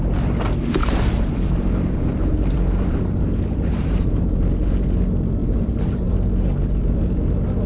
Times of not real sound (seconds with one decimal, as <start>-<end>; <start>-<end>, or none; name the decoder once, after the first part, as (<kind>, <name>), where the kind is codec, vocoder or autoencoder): 0.8-3.3 (vocoder, BigVGAN v2); 3.7-4.2; 5.4-6.1